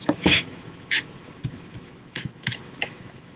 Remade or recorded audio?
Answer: remade